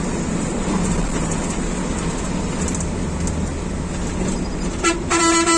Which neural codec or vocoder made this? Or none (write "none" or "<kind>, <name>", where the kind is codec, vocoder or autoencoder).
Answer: none